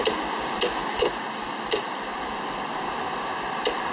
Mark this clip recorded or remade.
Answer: recorded